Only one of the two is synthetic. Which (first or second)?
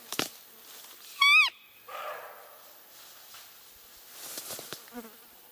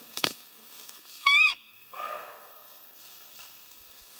second